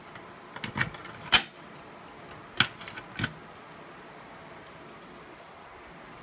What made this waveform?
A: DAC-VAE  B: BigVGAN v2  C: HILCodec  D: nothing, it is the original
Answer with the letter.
D